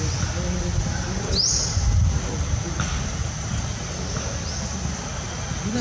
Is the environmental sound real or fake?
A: real